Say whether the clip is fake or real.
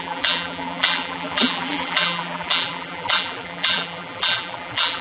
fake